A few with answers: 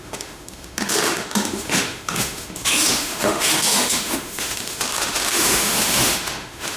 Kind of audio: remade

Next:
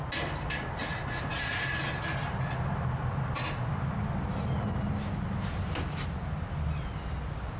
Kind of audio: recorded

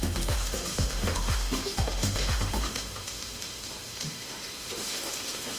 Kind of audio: remade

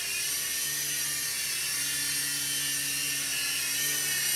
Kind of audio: recorded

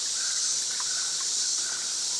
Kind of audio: recorded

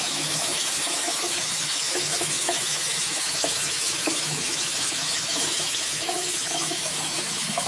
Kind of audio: remade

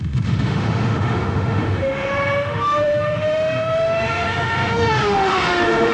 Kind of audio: remade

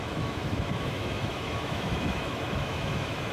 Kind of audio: remade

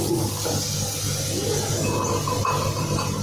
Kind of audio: recorded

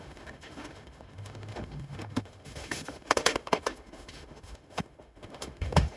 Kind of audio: remade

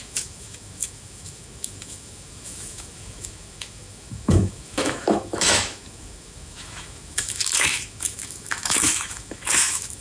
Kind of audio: remade